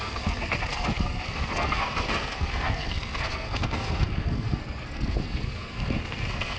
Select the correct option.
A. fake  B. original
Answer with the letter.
A